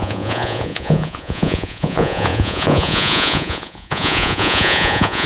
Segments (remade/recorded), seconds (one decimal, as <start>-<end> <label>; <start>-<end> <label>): 0.0-5.3 remade